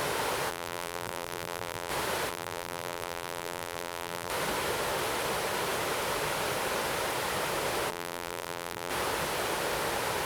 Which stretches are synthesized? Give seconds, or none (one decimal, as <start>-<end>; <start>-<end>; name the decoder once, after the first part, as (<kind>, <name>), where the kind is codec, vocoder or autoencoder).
0.5-1.9 (vocoder, BigVGAN v2); 2.3-4.3; 7.9-8.9